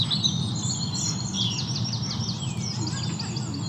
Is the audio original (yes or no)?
yes